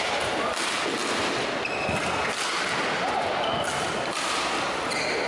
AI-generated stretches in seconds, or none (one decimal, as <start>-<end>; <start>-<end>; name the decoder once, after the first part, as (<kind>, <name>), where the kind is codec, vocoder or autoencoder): none